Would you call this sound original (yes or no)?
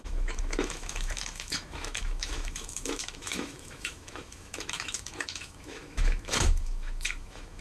no